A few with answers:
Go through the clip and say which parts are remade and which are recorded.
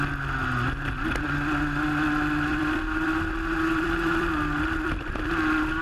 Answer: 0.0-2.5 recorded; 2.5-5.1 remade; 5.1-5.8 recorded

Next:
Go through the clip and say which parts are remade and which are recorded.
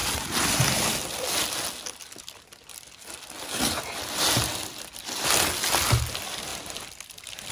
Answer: 0.0-6.5 recorded; 6.5-7.5 remade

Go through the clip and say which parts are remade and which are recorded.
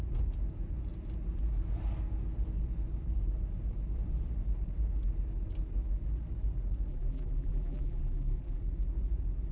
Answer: 0.0-6.9 recorded; 6.9-8.6 remade; 8.6-9.5 recorded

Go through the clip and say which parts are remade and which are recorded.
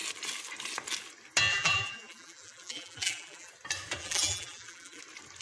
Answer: 0.0-1.5 recorded; 1.5-3.5 remade; 3.5-4.0 recorded; 4.0-5.0 remade; 5.0-5.4 recorded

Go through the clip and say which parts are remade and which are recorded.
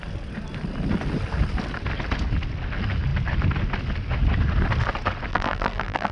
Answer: 0.0-5.3 recorded; 5.3-6.1 remade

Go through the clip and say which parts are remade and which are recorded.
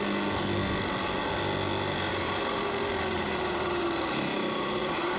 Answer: 0.0-2.1 recorded; 2.1-5.2 remade